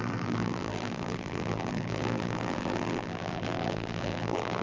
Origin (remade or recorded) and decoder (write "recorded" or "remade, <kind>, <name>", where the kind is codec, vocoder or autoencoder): remade, vocoder, BigVGAN v2